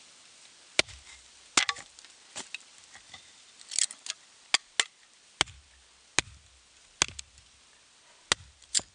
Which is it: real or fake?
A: real